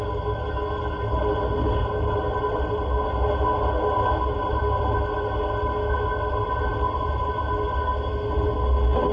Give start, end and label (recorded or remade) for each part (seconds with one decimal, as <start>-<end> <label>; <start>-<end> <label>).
0.0-9.1 recorded